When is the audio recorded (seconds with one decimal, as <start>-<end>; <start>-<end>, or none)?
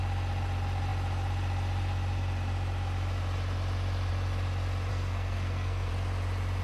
0.0-4.9; 5.9-6.6